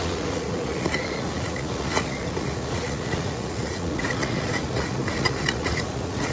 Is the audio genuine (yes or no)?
no